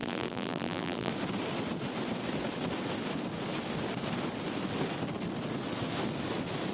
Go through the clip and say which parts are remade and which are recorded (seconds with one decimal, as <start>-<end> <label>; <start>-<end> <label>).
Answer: 0.0-1.1 remade; 1.1-6.7 recorded